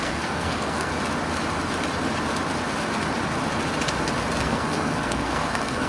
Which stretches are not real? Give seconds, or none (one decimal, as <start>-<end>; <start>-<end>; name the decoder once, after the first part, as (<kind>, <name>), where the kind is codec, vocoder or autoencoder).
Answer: 0.0-0.9 (codec, SNAC); 4.4-5.9

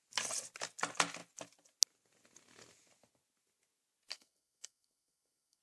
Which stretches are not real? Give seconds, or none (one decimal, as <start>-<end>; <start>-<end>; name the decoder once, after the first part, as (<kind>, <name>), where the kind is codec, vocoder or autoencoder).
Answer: 4.1-5.6 (codec, SNAC)

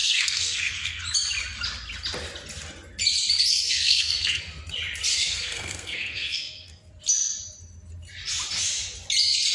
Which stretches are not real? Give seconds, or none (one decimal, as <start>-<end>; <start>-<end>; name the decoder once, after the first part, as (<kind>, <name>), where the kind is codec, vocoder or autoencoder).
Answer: 0.0-1.0 (codec, SNAC); 3.5-4.4; 5.1-6.9

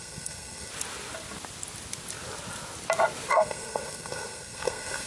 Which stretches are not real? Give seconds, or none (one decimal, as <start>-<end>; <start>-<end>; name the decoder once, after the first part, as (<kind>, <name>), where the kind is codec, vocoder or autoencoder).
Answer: 0.0-0.7 (codec, SNAC); 3.3-5.1